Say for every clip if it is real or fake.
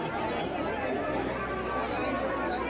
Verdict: real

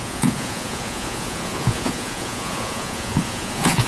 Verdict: fake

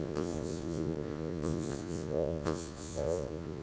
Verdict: fake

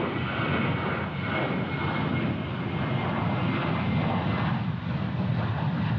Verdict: real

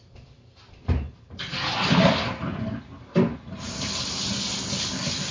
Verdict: real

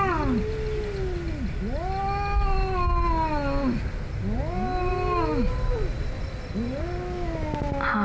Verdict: real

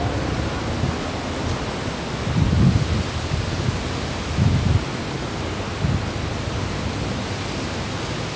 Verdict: real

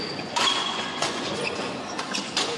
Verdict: fake